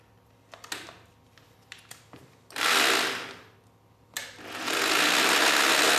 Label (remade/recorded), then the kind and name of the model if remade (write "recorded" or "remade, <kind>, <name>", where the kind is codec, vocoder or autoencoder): recorded